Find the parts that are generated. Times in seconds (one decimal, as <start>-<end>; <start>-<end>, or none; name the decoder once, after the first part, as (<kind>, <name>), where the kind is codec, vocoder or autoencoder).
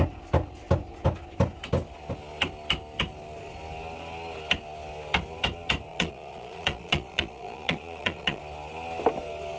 5.9-8.4 (vocoder, Vocos)